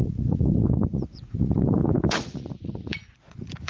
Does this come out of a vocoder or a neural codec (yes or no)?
yes